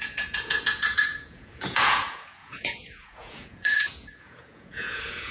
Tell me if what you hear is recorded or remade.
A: remade